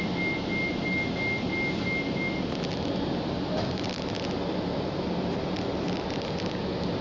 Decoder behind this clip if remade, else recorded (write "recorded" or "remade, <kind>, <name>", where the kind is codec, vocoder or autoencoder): recorded